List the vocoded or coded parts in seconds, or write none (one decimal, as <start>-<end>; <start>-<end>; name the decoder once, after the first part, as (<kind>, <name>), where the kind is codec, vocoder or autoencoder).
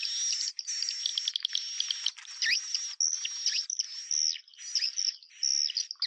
none